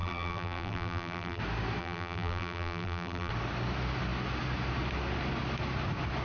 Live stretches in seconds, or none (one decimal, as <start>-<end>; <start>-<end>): 1.4-1.8; 3.3-6.2